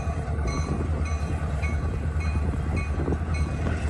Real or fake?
fake